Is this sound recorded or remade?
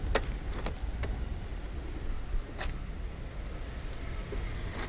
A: recorded